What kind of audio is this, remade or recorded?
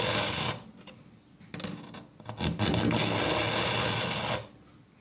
recorded